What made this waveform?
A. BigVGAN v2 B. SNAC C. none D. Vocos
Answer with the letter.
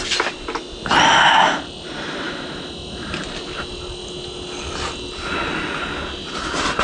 C